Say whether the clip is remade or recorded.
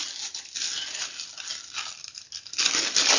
recorded